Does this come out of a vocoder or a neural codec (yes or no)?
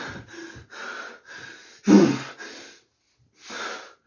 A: no